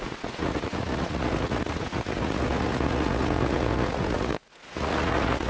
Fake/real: fake